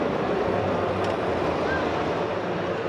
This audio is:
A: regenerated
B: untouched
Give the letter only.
A